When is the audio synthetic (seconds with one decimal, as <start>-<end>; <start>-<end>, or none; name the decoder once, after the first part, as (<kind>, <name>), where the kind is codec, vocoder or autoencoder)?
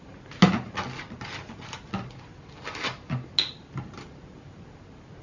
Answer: none